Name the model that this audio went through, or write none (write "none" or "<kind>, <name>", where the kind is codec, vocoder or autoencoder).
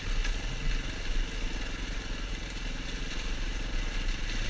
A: none